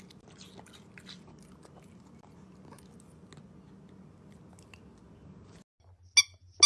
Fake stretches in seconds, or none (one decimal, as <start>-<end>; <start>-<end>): none